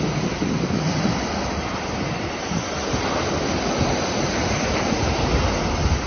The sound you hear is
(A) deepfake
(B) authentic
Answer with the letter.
B